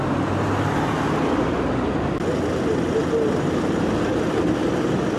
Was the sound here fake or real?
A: real